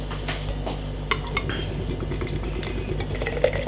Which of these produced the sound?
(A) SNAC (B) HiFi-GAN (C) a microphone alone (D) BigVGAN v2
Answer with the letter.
C